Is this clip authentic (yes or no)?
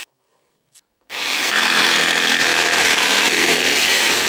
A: no